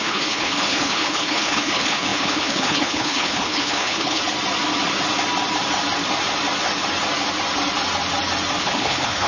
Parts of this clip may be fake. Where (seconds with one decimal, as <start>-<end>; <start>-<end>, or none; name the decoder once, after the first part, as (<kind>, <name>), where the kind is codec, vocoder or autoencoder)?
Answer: 0.0-4.2 (codec, HILCodec); 8.6-9.3